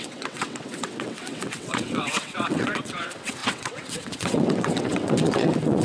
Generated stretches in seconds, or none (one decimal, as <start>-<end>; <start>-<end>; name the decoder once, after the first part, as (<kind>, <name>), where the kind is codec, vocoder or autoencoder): 0.0-5.8 (vocoder, WaveNeXt)